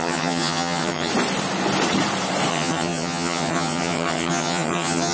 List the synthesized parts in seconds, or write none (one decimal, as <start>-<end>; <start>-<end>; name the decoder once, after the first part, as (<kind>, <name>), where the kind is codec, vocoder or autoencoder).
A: 0.0-1.1 (vocoder, HiFi-GAN); 2.5-5.1

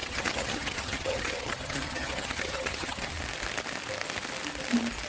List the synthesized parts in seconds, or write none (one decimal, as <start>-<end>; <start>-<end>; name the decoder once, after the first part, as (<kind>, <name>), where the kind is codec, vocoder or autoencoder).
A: 0.0-3.1 (vocoder, HiFi-GAN)

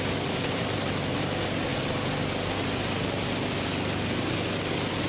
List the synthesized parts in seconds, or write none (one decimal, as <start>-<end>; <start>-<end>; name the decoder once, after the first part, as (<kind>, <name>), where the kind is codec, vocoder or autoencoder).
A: none

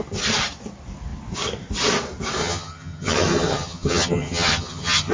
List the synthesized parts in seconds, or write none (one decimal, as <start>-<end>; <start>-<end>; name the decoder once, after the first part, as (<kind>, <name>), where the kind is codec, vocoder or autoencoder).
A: 2.4-5.1 (vocoder, HiFi-GAN)